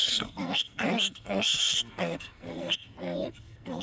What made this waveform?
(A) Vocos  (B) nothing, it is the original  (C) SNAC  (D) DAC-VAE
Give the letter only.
C